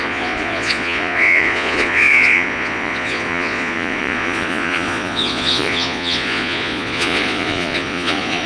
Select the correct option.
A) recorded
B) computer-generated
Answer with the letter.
B